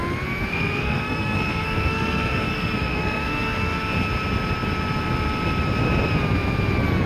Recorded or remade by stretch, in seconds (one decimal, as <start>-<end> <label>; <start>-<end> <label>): 0.0-0.5 recorded; 0.5-3.8 remade; 3.8-7.1 recorded